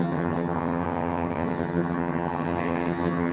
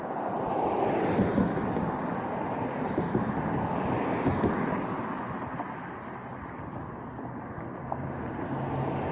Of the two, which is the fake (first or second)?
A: first